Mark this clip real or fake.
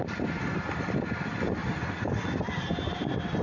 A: real